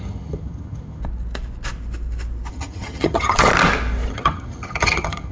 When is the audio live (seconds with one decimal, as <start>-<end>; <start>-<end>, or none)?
1.0-2.5; 3.5-4.1